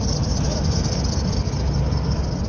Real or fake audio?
real